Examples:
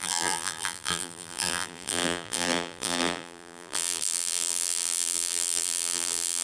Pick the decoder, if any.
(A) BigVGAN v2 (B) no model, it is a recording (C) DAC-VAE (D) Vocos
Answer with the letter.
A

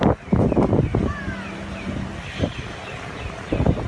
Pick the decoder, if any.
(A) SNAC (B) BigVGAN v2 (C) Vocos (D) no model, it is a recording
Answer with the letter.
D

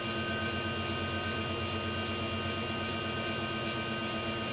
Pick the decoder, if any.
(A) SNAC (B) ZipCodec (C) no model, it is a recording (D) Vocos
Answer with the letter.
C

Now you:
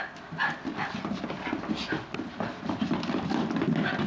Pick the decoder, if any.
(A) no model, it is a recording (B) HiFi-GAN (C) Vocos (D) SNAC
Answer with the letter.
A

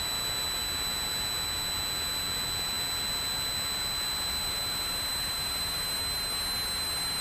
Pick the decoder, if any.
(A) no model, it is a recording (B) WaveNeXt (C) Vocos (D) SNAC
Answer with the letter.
A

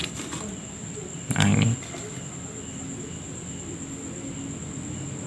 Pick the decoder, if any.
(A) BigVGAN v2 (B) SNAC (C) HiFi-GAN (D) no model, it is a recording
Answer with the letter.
D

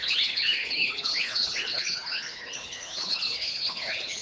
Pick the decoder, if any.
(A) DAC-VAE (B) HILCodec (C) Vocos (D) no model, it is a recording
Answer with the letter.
B